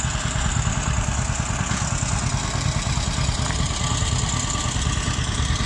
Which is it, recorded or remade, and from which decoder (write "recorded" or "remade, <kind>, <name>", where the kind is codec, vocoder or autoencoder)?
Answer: recorded